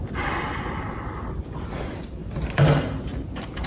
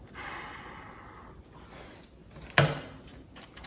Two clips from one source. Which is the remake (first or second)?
first